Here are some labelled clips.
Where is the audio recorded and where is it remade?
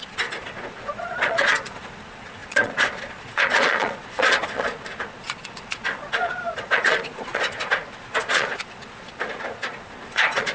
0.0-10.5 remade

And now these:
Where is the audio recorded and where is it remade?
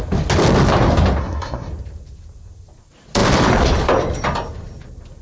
0.0-1.2 recorded; 1.2-1.7 remade; 1.7-5.2 recorded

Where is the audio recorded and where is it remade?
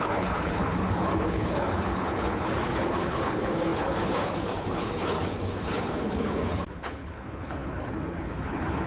0.0-8.9 remade